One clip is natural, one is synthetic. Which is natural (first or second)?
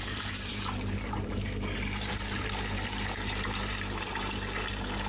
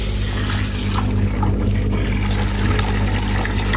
second